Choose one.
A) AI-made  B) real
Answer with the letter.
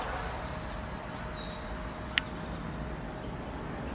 B